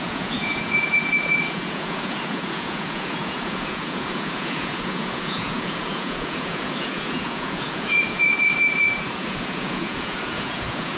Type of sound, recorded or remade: remade